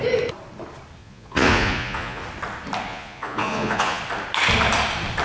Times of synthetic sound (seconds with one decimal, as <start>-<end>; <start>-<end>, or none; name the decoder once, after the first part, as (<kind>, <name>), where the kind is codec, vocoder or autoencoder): 1.0-2.2 (vocoder, Vocos); 2.9-4.0